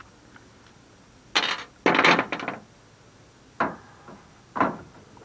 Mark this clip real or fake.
real